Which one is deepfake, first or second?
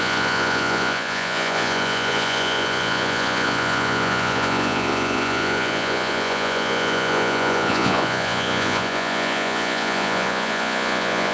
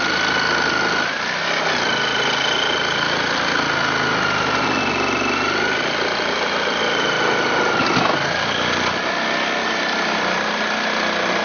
first